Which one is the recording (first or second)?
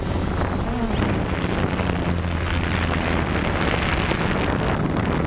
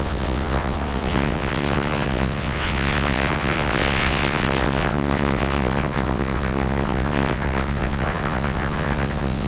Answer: first